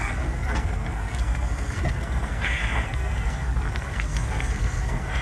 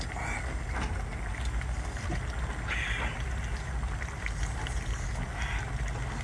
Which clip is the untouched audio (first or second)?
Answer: second